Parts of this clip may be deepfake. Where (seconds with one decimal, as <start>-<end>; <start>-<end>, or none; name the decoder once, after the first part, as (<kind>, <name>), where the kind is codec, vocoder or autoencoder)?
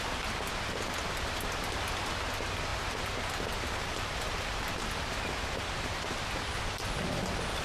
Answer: none